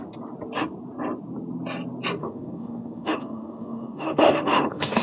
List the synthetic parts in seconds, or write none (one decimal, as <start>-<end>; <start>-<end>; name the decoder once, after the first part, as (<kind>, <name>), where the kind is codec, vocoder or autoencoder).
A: 2.2-5.0 (autoencoder, DAC-VAE)